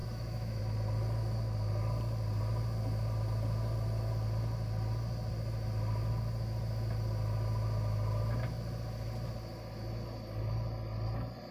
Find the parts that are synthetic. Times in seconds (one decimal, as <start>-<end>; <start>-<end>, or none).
0.0-0.6